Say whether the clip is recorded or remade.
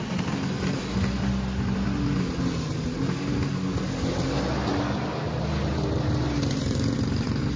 recorded